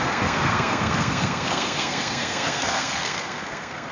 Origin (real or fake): fake